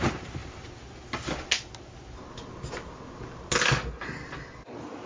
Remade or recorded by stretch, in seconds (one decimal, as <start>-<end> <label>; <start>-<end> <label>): 0.0-5.1 recorded